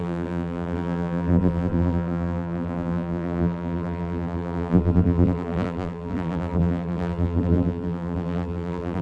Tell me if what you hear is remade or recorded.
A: remade